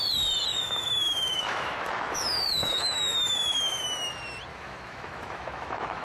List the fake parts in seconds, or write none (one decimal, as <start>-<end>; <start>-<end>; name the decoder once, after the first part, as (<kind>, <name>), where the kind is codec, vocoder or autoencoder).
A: 0.5-4.1 (autoencoder, DAC-VAE); 4.5-6.0